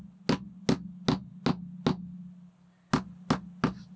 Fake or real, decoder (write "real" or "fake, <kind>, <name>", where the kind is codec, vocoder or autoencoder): real